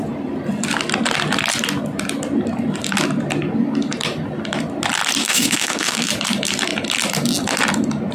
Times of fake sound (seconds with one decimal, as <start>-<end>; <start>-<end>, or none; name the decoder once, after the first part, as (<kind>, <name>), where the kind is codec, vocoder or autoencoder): 5.2-6.1 (autoencoder, DAC-VAE)